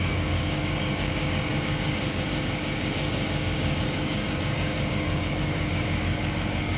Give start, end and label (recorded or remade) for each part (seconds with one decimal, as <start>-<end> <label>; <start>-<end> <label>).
0.0-6.8 remade